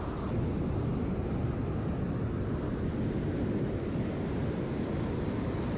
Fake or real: real